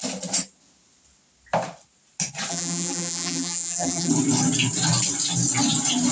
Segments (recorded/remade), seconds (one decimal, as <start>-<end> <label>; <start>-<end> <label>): 0.0-2.5 recorded; 2.5-4.1 remade; 4.1-6.1 recorded